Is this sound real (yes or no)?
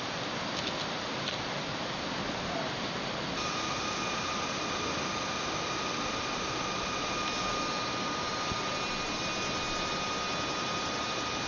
yes